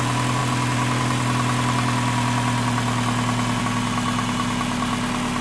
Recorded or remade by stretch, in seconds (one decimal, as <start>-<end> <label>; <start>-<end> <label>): 0.0-5.4 recorded